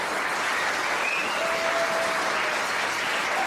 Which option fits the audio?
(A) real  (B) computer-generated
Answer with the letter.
A